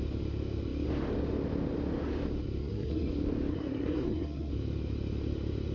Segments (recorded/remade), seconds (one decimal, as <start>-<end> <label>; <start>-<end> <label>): 0.0-2.6 recorded; 2.6-3.1 remade; 3.1-3.5 recorded; 3.5-4.5 remade; 4.5-5.7 recorded

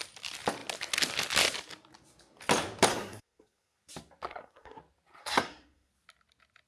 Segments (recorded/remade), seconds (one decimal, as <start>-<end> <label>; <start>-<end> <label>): 0.0-2.9 recorded; 2.9-3.8 remade; 3.8-4.3 recorded; 4.3-4.8 remade; 4.8-5.2 recorded; 5.2-5.9 remade; 5.9-6.7 recorded

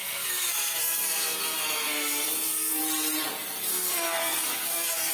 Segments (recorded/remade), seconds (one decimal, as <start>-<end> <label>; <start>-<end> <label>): 0.0-2.8 remade; 2.8-3.7 recorded; 3.7-5.1 remade

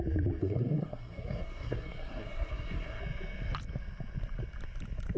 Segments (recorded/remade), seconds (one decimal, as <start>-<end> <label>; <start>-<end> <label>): 0.0-0.4 recorded; 0.4-3.0 remade; 3.0-5.2 recorded

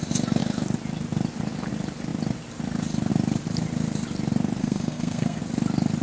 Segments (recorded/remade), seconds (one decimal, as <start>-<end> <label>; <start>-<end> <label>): 0.0-4.6 recorded; 4.6-5.4 remade; 5.4-6.0 recorded

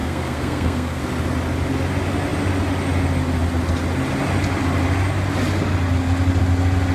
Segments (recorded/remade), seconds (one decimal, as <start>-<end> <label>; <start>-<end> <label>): 0.0-1.0 remade; 1.0-6.9 recorded

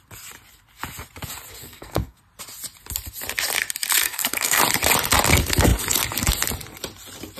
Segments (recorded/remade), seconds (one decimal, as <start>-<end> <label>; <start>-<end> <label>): 0.0-1.6 recorded; 1.6-2.2 remade; 2.2-4.0 recorded; 4.0-4.6 remade; 4.6-7.4 recorded